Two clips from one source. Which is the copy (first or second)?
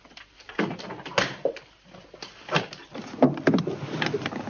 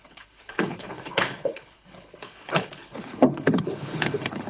second